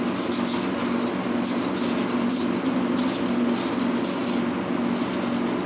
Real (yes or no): yes